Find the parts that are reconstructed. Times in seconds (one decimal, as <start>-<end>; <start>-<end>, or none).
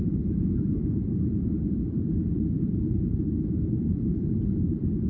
0.0-5.1